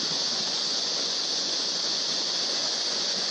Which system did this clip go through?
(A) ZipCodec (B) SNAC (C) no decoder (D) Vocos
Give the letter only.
D